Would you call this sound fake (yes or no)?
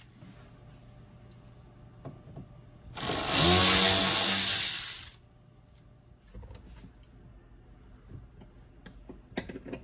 no